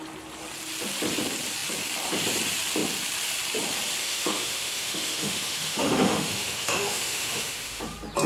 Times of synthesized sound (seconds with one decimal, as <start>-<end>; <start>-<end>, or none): 4.0-7.8